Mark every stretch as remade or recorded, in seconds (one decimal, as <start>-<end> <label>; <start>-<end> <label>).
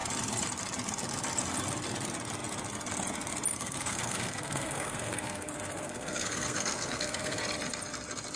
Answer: 0.0-3.5 recorded; 3.5-7.4 remade; 7.4-8.4 recorded